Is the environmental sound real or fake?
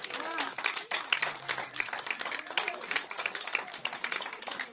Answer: fake